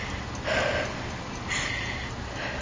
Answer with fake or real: real